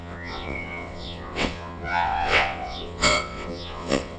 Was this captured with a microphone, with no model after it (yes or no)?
no